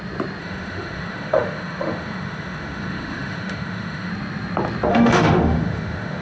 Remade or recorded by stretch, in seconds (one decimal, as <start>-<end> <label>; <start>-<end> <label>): 0.0-0.4 recorded; 0.4-4.1 remade; 4.1-4.9 recorded; 4.9-6.2 remade